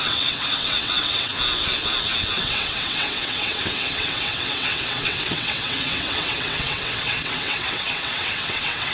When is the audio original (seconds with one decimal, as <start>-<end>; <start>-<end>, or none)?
1.3-2.4